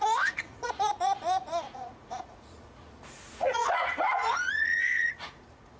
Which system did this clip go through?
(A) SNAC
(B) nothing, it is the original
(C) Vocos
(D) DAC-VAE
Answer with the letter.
C